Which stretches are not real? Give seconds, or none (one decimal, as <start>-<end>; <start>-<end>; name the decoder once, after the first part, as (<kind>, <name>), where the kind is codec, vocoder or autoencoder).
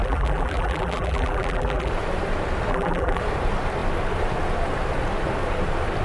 0.0-1.9 (vocoder, BigVGAN v2); 2.7-3.2